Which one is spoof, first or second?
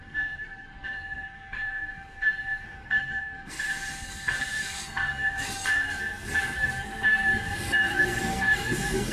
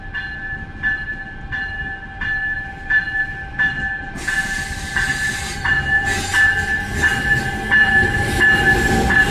first